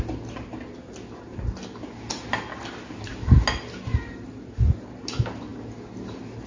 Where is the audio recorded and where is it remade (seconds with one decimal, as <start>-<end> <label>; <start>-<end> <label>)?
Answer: 0.0-6.5 recorded